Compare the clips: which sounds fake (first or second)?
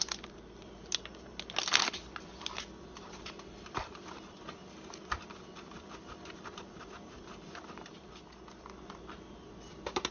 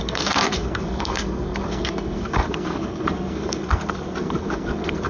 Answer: second